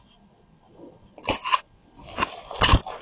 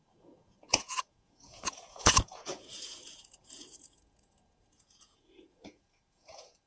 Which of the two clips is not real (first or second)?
second